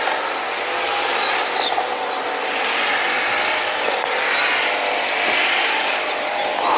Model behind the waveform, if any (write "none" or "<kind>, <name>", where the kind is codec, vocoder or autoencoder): none